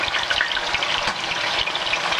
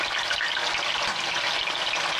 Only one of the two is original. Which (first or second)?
second